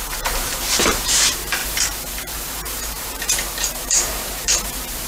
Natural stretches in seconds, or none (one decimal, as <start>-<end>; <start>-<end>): none